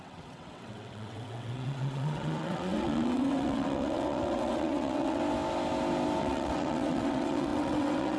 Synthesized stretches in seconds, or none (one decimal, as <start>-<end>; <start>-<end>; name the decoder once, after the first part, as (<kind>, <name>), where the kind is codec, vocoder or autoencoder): 0.0-5.2 (vocoder, WaveNeXt); 6.2-8.2